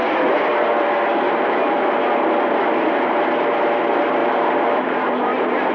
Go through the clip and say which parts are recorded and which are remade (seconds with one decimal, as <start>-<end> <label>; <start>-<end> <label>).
0.0-4.2 recorded; 4.2-5.7 remade